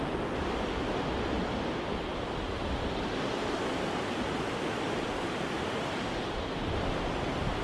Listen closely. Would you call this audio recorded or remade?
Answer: recorded